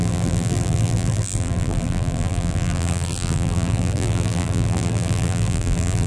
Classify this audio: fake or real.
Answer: fake